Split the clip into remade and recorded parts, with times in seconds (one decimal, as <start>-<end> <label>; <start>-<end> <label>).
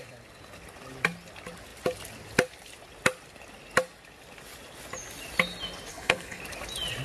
0.0-5.9 recorded; 5.9-6.4 remade; 6.4-7.0 recorded